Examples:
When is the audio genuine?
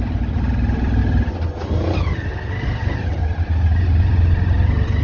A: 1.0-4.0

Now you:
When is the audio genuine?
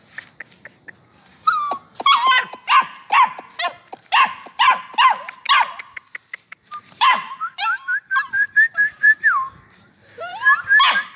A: 0.0-6.2; 10.4-11.2